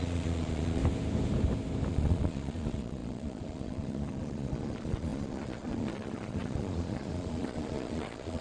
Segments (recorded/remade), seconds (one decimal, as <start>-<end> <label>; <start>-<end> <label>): 0.0-0.8 remade; 0.8-1.9 recorded; 1.9-8.4 remade

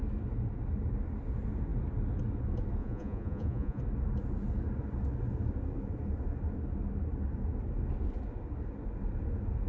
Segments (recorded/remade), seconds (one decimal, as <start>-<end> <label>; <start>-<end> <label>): 0.0-2.8 recorded; 2.8-3.8 remade; 3.8-9.7 recorded

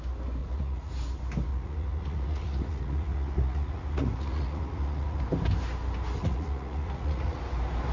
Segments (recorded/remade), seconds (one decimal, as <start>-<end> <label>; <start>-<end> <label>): 0.0-0.4 recorded; 0.4-0.9 remade; 0.9-1.5 recorded; 1.5-5.2 remade; 5.2-6.2 recorded; 6.2-7.4 remade; 7.4-7.9 recorded